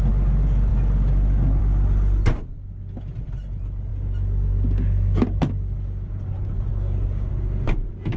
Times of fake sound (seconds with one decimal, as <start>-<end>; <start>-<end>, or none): none